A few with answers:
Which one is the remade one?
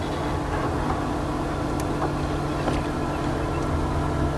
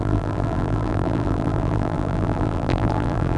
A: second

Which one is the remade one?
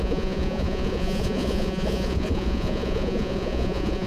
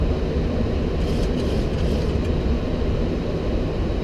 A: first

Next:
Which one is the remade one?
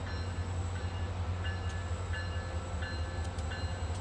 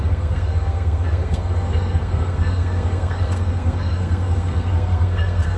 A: second